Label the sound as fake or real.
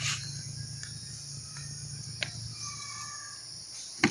real